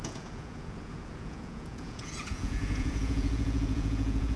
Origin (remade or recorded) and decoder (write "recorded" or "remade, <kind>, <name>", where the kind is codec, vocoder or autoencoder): remade, vocoder, Vocos